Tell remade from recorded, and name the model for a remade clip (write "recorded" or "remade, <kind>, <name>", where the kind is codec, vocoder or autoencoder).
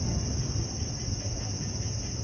recorded